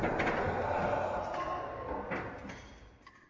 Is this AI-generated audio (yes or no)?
no